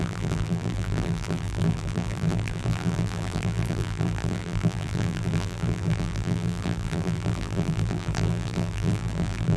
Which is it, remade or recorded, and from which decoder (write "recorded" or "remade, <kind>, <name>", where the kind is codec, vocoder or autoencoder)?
remade, vocoder, BigVGAN v2